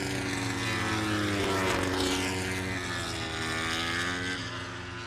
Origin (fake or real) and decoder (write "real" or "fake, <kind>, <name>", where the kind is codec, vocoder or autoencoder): real